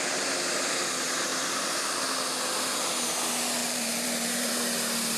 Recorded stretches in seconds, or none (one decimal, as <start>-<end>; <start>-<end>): 0.0-3.6; 4.5-5.2